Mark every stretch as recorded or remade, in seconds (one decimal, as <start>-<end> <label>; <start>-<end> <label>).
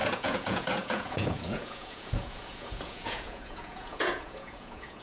0.0-5.0 remade